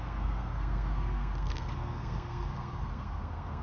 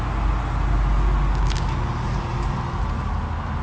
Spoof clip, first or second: first